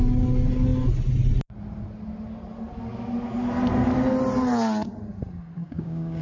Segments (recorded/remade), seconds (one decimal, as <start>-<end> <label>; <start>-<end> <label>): 0.0-5.6 recorded; 5.6-6.2 remade